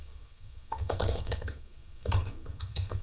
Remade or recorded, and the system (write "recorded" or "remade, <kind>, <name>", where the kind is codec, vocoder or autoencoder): remade, codec, SNAC